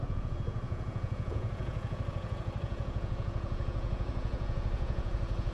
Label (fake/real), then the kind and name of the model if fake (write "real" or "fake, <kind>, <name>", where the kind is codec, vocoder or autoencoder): fake, vocoder, Vocos